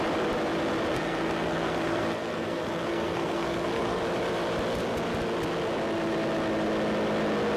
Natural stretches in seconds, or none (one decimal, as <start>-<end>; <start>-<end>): 0.0-0.9; 4.0-7.6